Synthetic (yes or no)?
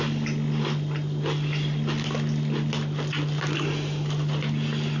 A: no